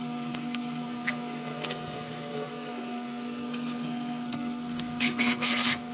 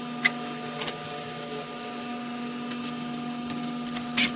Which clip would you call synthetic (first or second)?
first